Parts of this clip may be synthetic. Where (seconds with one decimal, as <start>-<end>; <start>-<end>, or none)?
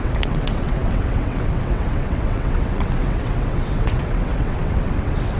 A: 0.0-5.4